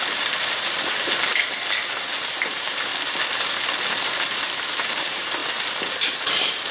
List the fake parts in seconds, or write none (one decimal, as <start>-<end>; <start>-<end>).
0.0-2.9; 3.9-5.4; 6.3-6.7